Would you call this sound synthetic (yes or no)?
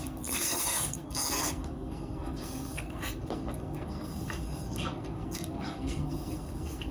yes